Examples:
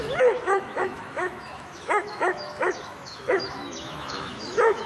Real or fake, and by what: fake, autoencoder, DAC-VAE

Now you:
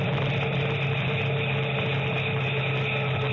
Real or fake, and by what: real